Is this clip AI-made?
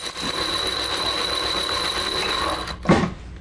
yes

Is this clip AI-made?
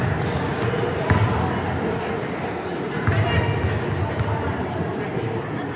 no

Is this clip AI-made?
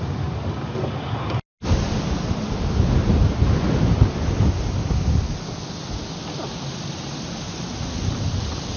no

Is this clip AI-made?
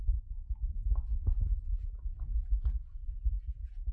no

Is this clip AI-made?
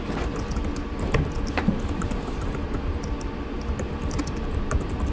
no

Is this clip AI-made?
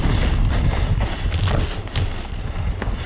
no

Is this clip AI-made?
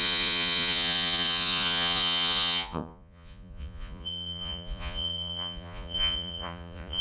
yes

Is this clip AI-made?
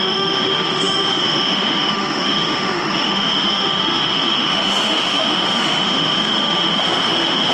yes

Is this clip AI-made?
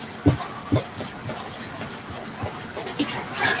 no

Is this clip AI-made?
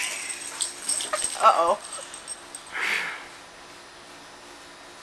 no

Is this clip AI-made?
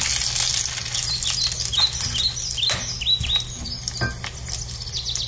no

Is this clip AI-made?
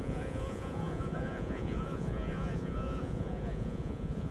yes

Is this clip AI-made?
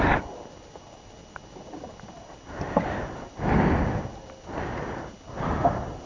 no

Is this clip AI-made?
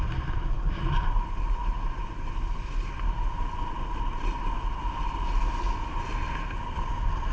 no